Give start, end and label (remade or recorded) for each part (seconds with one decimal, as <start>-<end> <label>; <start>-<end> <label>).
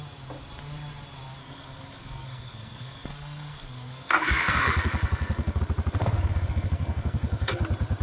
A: 0.0-1.4 recorded; 1.4-5.6 remade; 5.6-6.0 recorded; 6.0-7.6 remade; 7.6-8.0 recorded